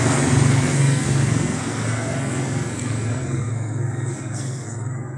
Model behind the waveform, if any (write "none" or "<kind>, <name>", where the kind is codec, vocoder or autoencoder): codec, SNAC